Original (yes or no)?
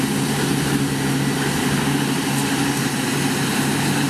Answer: yes